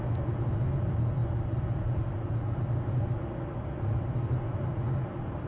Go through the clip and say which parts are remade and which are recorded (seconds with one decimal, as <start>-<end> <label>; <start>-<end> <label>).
0.0-5.5 recorded